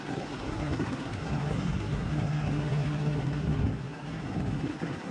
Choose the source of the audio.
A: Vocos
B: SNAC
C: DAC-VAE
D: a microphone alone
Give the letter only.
B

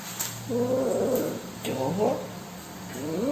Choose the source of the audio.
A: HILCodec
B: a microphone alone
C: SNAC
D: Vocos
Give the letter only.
B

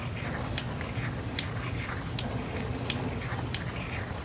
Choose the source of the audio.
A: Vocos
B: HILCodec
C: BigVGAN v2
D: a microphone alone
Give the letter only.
D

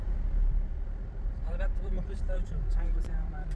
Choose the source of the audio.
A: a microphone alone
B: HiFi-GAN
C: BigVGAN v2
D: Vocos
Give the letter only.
C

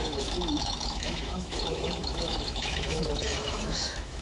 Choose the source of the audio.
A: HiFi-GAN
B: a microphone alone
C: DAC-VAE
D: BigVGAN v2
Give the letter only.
C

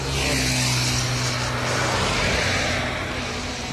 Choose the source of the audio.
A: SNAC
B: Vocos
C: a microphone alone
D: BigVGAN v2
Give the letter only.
C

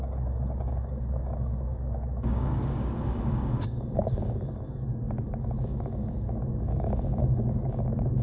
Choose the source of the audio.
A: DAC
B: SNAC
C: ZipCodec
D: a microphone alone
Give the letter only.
A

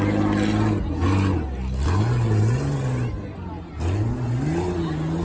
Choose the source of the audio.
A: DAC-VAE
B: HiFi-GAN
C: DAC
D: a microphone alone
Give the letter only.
D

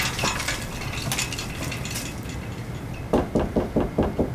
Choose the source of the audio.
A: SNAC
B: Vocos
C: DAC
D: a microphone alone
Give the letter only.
D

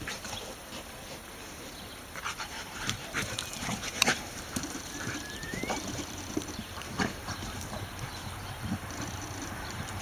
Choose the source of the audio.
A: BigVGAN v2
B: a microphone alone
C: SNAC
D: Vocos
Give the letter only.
A